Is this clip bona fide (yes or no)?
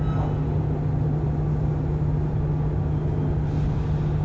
yes